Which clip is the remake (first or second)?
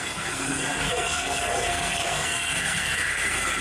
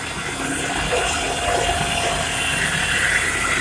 first